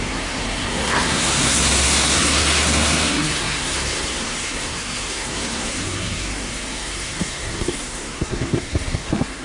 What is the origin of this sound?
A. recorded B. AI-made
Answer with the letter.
B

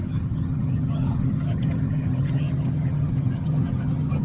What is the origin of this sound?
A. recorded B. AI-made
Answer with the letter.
B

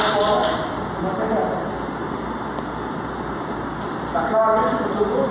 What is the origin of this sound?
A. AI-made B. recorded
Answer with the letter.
B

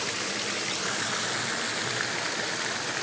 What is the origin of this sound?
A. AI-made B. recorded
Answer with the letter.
A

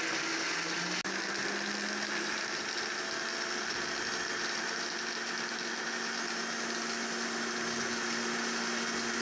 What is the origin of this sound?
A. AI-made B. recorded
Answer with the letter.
B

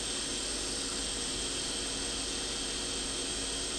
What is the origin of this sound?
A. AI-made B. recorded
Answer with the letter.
B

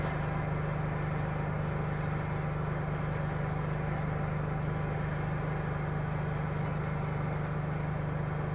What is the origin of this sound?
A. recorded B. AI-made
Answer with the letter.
A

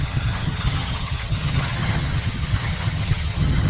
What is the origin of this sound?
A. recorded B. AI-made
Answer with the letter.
B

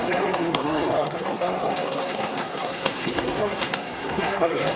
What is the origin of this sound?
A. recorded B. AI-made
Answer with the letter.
B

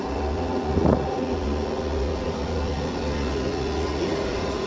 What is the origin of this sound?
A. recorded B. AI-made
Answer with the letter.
B